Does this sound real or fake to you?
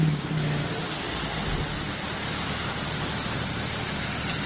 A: real